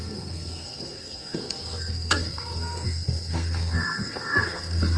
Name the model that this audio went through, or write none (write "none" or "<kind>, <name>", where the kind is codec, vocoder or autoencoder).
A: codec, SNAC